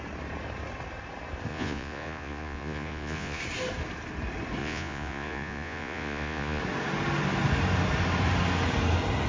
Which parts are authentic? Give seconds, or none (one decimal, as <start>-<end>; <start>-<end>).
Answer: 0.0-1.5; 3.4-4.6; 6.6-9.3